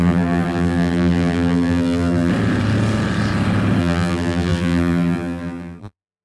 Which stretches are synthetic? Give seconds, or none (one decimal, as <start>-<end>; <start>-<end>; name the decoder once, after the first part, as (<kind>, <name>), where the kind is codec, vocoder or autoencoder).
0.0-2.3 (vocoder, BigVGAN v2); 3.8-6.2